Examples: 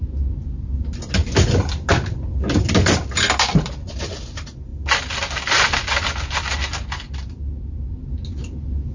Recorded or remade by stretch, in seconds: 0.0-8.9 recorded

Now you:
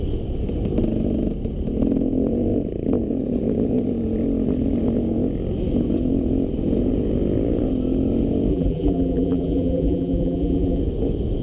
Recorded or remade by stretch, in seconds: 0.0-8.5 recorded; 8.5-10.8 remade; 10.8-11.4 recorded

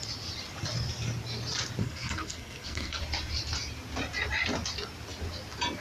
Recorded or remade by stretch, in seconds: 0.0-1.8 recorded; 1.8-3.0 remade; 3.0-5.8 recorded

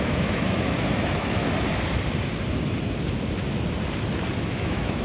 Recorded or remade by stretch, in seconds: 0.0-1.4 remade; 1.4-4.4 recorded; 4.4-5.0 remade